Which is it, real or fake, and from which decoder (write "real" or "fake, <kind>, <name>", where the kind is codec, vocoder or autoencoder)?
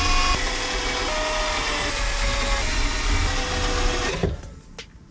real